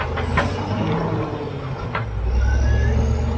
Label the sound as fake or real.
real